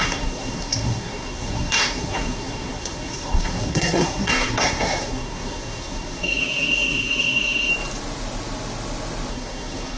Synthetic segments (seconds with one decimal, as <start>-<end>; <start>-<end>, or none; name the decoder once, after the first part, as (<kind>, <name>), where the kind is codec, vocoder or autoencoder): 0.0-7.7 (codec, SNAC); 9.3-10.0